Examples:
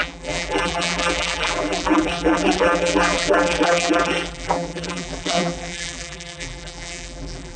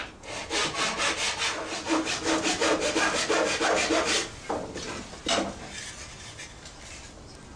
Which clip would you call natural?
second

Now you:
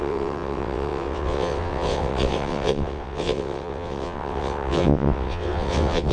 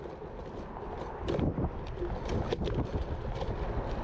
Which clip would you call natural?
second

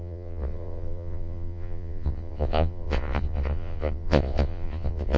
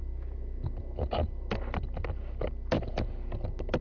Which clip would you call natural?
second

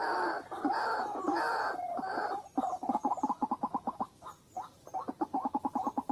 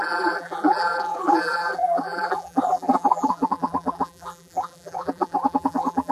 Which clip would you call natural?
first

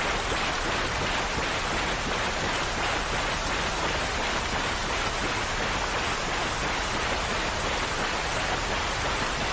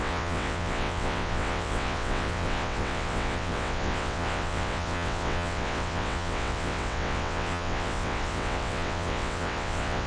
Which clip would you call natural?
first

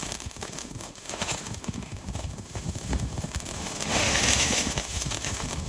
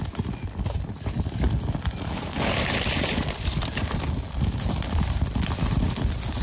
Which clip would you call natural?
second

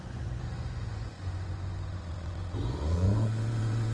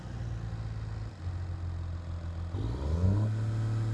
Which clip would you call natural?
second